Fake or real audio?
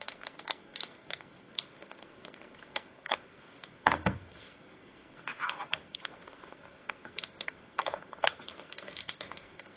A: fake